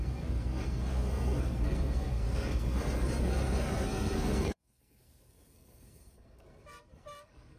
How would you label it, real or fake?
fake